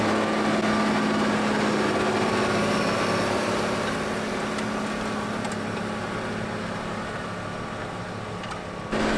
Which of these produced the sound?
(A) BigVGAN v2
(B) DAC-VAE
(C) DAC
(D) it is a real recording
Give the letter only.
D